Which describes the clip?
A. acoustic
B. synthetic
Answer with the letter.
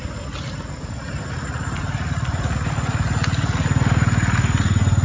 A